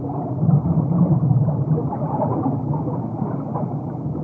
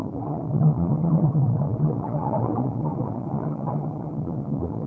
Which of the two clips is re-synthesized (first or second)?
second